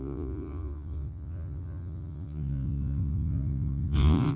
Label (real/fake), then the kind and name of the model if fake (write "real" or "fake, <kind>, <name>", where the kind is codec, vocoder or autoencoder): fake, vocoder, Vocos